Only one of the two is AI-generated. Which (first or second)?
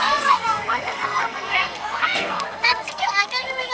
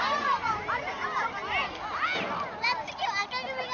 first